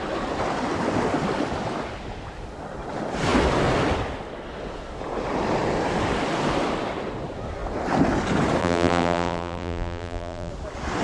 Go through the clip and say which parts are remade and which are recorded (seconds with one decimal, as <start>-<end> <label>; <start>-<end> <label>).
0.0-8.6 recorded; 8.6-10.5 remade; 10.5-11.0 recorded